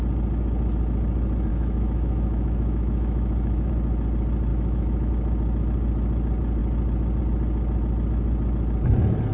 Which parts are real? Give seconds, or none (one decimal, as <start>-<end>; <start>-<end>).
0.0-1.5; 3.7-4.5; 5.1-9.3